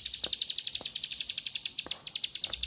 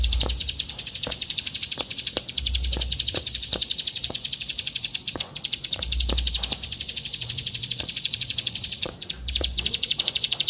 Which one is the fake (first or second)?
second